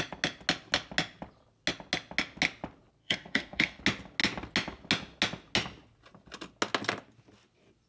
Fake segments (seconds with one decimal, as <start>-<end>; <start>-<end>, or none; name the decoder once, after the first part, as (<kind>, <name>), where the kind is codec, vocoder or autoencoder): 3.0-3.8 (codec, SNAC)